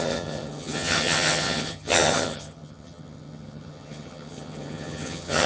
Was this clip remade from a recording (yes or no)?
yes